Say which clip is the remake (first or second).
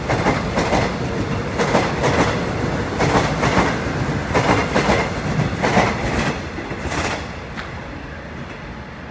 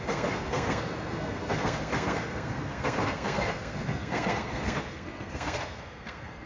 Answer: second